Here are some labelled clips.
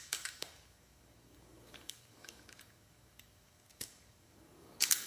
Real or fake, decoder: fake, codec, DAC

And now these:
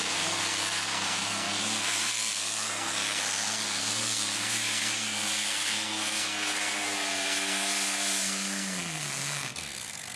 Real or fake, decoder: fake, codec, SNAC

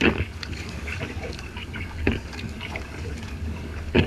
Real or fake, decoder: fake, codec, DAC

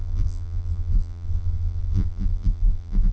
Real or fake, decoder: fake, vocoder, BigVGAN v2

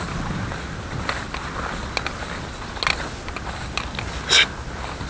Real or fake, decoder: real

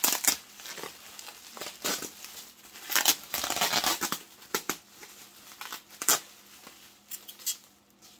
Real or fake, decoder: real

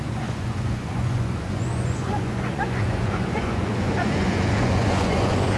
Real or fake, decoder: fake, vocoder, Vocos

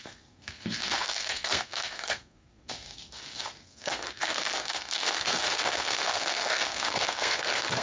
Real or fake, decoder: fake, codec, SNAC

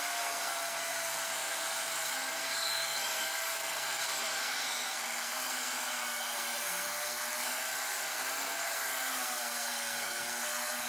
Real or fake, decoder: fake, codec, SNAC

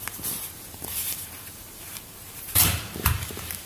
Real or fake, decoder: fake, vocoder, BigVGAN v2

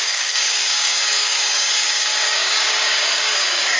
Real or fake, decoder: fake, codec, DAC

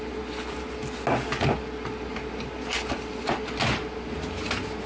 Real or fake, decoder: real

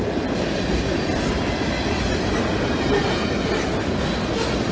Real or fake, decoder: real